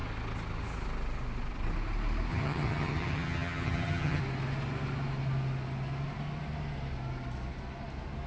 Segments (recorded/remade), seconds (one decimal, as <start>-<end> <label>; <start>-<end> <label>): 0.0-2.3 recorded; 2.3-4.2 remade; 4.2-8.3 recorded